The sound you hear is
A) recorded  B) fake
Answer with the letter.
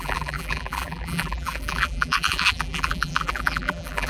B